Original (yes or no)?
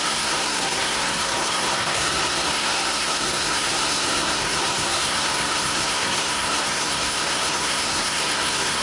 no